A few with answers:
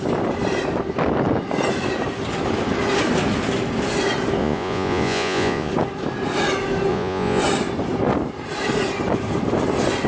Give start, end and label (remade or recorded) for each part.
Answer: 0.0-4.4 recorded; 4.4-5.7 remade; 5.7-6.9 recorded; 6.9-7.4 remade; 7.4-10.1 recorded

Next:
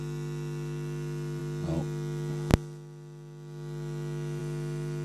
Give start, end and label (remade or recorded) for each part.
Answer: 0.0-5.0 recorded